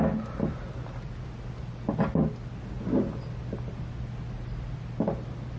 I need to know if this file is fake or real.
real